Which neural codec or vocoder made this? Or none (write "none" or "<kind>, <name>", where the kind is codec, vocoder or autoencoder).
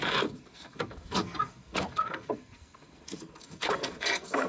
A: codec, SNAC